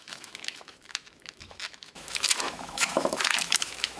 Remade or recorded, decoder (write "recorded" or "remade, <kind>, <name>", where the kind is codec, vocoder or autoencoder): remade, autoencoder, DAC-VAE